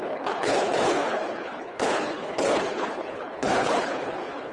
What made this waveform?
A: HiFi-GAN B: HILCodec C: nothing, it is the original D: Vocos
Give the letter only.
B